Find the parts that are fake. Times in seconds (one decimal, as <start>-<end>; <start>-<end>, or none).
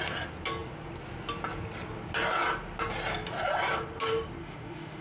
4.4-5.0